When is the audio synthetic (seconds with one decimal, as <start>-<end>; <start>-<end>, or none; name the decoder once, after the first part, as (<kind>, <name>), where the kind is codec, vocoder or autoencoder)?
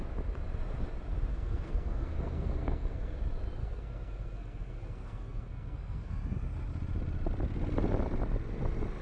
1.3-3.2 (codec, SNAC); 3.6-6.1